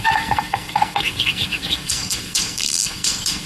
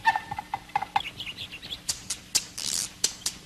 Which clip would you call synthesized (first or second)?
first